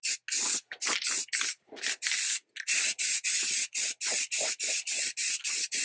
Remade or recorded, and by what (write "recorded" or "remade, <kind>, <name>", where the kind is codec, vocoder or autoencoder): recorded